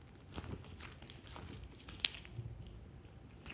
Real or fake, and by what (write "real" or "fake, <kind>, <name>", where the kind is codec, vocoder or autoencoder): real